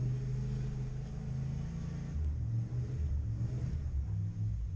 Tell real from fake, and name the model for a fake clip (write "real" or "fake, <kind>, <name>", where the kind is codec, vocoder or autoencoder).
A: real